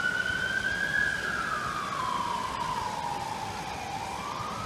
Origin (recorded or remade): recorded